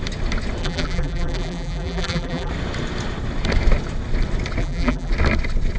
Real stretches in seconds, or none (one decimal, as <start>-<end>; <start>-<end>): 0.0-0.6; 2.5-4.6; 5.1-5.8